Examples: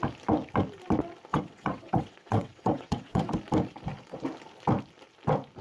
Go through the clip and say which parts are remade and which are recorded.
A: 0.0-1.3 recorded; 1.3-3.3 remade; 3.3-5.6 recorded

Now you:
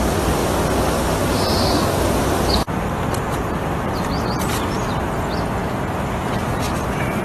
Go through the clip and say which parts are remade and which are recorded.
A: 0.0-7.2 recorded

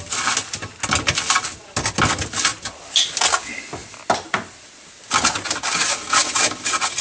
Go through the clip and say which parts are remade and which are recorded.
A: 0.0-7.0 recorded

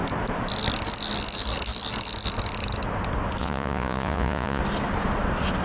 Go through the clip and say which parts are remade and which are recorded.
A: 0.0-3.4 recorded; 3.4-4.6 remade; 4.6-5.6 recorded

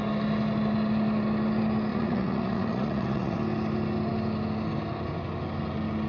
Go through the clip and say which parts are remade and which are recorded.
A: 0.0-1.9 recorded; 1.9-3.4 remade; 3.4-6.1 recorded